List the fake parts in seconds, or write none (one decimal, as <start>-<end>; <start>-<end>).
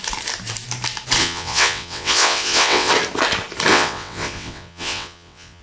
1.2-2.9; 3.7-5.6